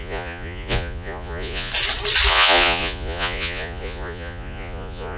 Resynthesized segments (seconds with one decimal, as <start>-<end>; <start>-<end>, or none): 0.0-1.7; 2.3-5.2